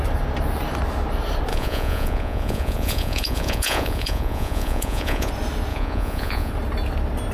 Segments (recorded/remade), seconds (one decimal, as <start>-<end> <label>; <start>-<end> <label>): 0.0-1.5 recorded; 1.5-5.3 remade; 5.3-5.7 recorded; 5.7-6.5 remade; 6.5-7.3 recorded